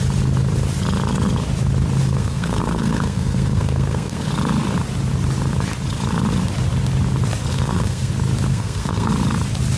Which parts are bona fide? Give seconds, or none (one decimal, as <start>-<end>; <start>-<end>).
0.0-2.0; 4.3-7.5; 8.1-8.5; 9.1-9.8